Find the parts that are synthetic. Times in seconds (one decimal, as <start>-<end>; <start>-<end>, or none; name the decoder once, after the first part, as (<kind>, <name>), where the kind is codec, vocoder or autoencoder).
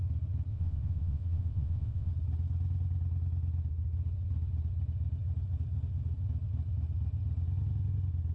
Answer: 0.5-2.1 (vocoder, WaveNeXt)